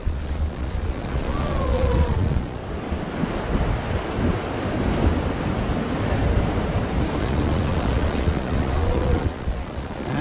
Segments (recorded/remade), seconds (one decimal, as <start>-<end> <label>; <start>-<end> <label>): 0.0-2.6 remade; 2.6-7.2 recorded; 7.2-10.2 remade